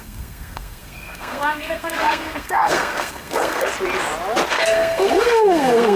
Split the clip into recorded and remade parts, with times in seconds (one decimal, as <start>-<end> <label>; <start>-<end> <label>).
0.0-3.7 remade; 3.7-4.5 recorded; 4.5-6.0 remade